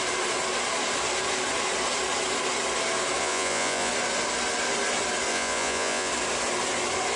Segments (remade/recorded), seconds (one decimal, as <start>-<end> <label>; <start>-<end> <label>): 0.0-3.2 recorded; 3.2-3.9 remade; 3.9-5.3 recorded; 5.3-6.1 remade; 6.1-7.2 recorded